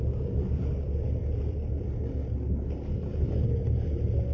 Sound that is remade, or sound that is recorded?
recorded